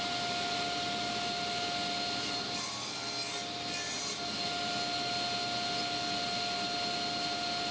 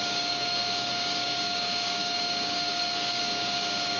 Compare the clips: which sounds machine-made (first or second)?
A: second